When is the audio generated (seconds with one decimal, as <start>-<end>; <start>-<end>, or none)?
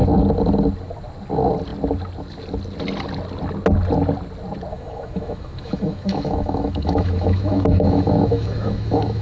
4.7-9.2